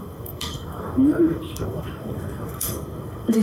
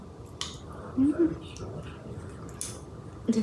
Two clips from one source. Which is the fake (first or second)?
first